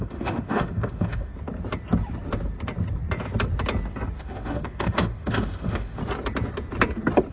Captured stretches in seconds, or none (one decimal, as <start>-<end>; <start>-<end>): 1.3-4.2; 6.0-7.3